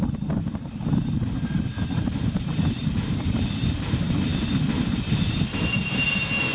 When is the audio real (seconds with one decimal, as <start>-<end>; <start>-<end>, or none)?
0.0-2.1; 2.8-6.5